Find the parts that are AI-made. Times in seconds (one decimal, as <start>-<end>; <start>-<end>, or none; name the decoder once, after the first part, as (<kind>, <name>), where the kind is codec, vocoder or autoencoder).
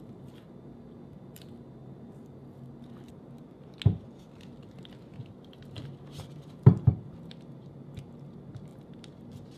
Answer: 5.2-6.9 (vocoder, BigVGAN v2); 8.7-9.6